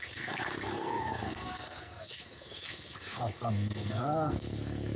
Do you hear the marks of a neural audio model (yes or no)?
yes